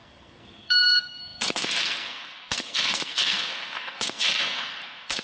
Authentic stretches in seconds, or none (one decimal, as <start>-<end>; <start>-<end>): none